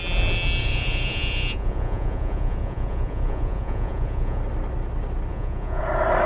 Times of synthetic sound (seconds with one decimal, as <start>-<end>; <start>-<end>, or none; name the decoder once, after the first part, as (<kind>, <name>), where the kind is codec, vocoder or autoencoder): 0.6-4.4 (vocoder, Vocos); 5.3-5.8